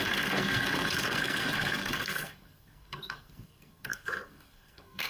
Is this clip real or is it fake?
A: fake